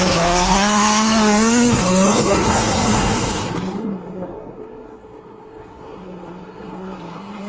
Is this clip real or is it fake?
fake